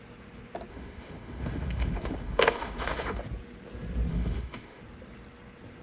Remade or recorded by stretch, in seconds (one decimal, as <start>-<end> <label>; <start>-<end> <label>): 0.0-0.7 recorded; 0.7-3.2 remade; 3.2-4.1 recorded; 4.1-4.8 remade; 4.8-5.8 recorded